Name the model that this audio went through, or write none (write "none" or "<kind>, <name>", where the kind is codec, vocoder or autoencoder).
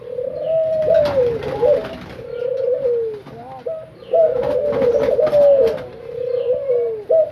none